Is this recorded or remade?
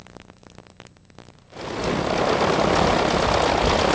recorded